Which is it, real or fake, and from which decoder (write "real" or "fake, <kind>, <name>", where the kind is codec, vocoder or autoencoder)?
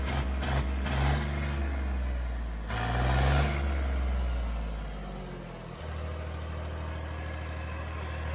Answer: real